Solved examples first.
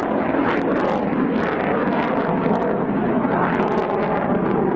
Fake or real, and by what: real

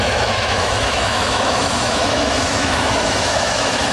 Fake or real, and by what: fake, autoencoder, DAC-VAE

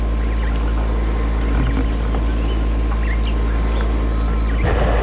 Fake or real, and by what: real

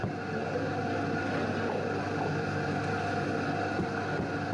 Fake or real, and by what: real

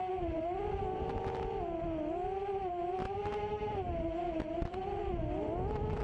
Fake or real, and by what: real